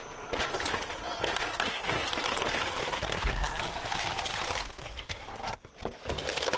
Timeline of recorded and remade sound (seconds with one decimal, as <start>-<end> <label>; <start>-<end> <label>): 0.0-1.5 recorded; 1.5-2.1 remade; 2.1-2.8 recorded; 2.8-3.6 remade; 3.6-4.8 recorded; 4.8-5.7 remade; 5.7-6.6 recorded